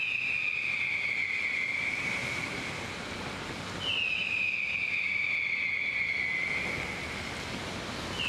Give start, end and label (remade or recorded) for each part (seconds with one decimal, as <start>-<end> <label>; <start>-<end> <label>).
0.0-8.3 recorded